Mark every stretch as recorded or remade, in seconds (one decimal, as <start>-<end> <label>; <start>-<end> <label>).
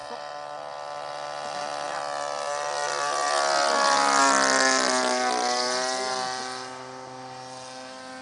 0.0-8.2 recorded